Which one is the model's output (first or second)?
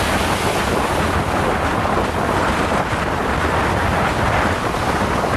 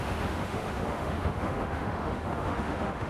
second